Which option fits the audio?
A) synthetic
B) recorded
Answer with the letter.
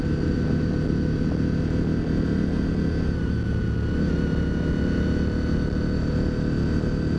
B